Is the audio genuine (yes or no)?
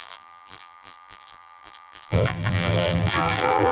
no